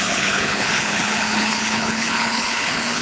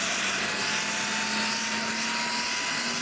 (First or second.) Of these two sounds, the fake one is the first